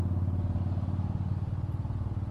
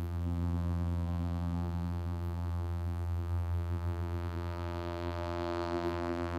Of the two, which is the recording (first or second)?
first